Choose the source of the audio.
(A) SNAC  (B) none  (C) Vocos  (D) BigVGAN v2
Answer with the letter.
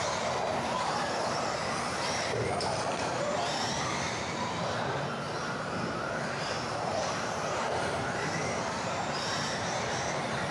D